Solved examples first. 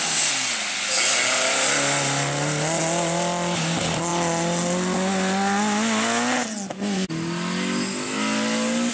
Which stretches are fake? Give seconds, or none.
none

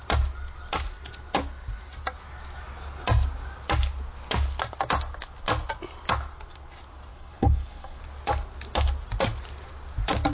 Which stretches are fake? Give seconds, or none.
7.1-8.0 (codec, HILCodec)

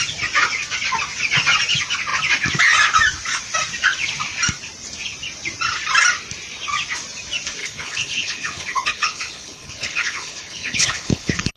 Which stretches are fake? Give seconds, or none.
7.6-11.6 (codec, HILCodec)

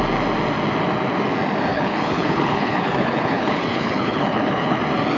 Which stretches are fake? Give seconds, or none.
1.7-4.8 (codec, HILCodec)

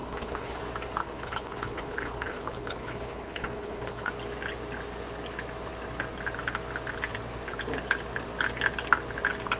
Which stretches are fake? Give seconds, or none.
0.0-0.6 (codec, HILCodec); 1.0-4.1

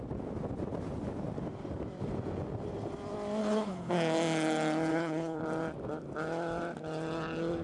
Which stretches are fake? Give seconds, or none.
3.4-3.9 (codec, HILCodec); 4.9-5.4